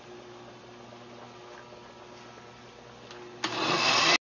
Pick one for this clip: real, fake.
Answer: real